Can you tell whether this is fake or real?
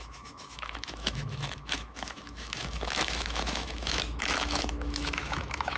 fake